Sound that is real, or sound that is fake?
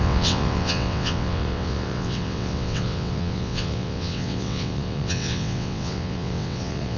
fake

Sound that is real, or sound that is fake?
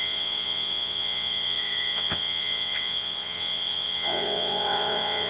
fake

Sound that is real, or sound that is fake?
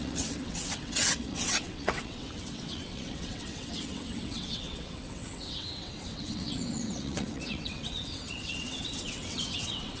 fake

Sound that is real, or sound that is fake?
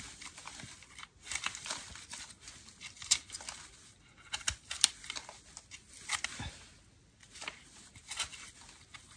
real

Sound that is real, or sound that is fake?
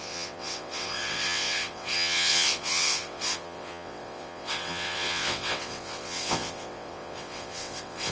fake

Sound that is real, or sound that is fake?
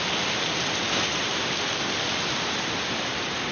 real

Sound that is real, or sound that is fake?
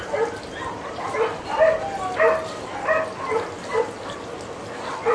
real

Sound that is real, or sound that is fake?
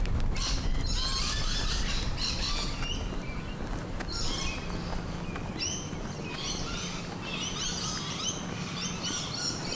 real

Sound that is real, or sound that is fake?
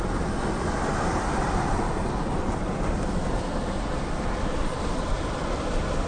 real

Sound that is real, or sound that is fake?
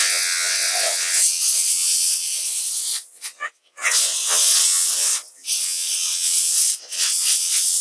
fake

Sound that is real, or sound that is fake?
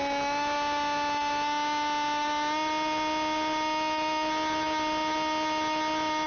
real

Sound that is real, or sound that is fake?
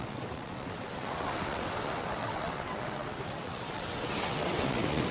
fake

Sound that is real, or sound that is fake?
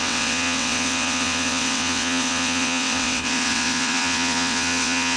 fake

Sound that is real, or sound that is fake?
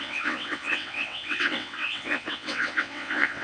fake